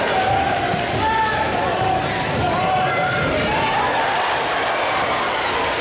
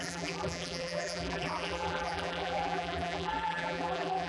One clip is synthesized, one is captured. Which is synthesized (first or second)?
second